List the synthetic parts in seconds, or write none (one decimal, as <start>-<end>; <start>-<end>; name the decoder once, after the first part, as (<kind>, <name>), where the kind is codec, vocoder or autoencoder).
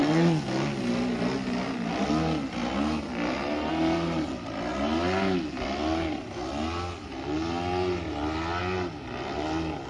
none